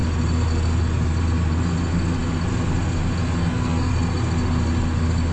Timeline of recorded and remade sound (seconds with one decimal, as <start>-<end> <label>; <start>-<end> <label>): 0.0-3.4 recorded; 3.4-3.9 remade; 3.9-5.3 recorded